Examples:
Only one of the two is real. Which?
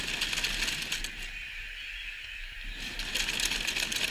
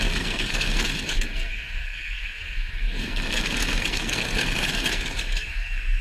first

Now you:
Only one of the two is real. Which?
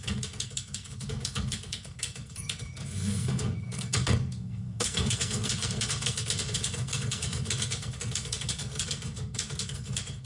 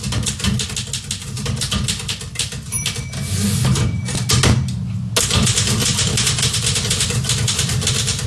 second